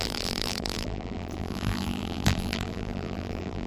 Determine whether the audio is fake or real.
fake